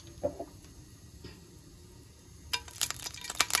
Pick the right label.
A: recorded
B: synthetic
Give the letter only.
A